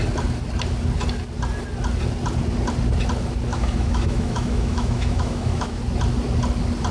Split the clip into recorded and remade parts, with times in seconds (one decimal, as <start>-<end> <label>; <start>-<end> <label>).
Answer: 0.0-3.5 recorded; 3.5-5.8 remade; 5.8-6.9 recorded